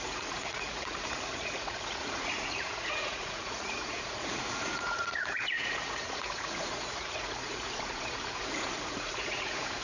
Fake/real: fake